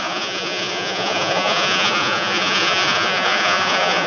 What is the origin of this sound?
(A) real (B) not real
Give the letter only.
B